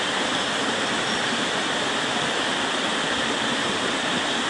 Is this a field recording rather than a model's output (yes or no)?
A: yes